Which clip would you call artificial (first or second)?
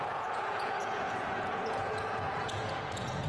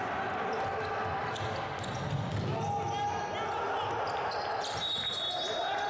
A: first